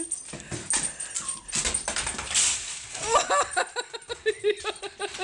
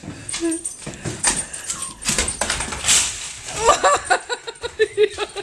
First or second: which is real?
first